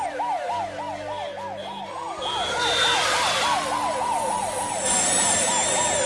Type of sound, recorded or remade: recorded